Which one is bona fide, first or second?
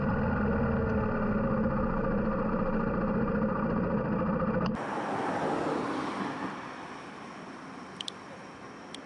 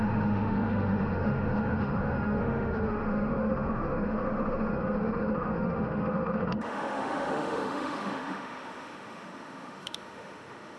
first